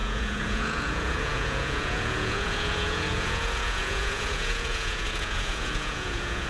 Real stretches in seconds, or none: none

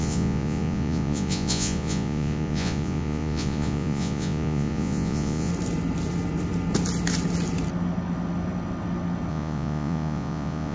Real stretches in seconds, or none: 5.5-9.3

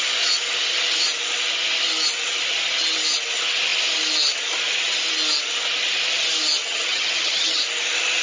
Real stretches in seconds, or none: 0.0-6.6; 7.6-8.2

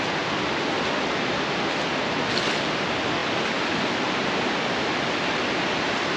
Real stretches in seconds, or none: 0.0-6.2

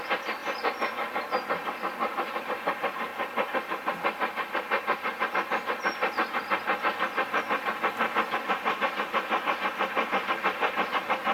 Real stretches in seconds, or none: 0.0-3.1; 5.3-11.3

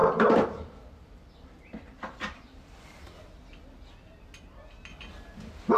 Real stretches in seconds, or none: 3.5-5.8

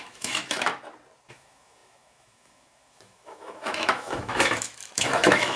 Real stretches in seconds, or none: 0.7-1.3

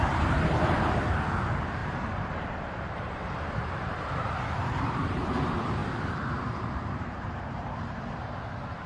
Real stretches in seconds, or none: none